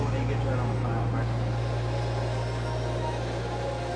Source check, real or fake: real